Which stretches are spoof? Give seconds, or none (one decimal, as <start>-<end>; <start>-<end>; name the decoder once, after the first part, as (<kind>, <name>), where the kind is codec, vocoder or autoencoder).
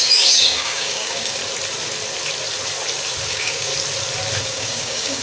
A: 0.0-1.4 (codec, DAC); 3.3-3.7; 4.4-5.2